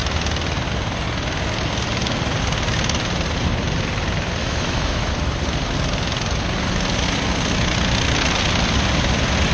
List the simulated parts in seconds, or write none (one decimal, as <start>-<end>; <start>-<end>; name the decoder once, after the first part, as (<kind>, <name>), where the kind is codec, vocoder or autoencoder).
4.4-5.1 (autoencoder, DAC-VAE)